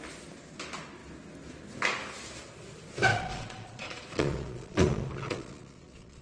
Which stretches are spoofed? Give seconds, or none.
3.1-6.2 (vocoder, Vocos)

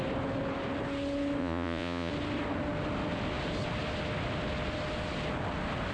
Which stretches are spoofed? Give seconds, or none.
1.4-2.1 (vocoder, Vocos)

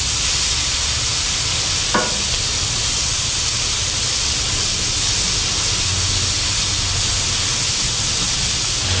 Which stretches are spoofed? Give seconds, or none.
none

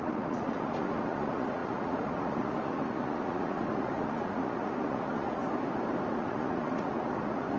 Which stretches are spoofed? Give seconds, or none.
0.0-5.4 (vocoder, Vocos); 6.1-7.6